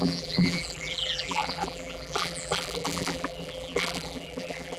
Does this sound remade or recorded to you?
remade